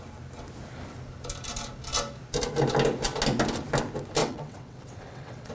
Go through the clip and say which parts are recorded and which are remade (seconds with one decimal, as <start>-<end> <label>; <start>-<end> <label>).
0.0-4.2 recorded; 4.2-5.5 remade